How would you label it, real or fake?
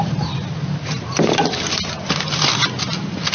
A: real